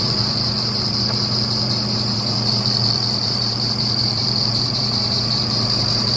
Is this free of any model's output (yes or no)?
no